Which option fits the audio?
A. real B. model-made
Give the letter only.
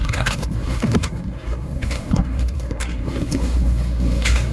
B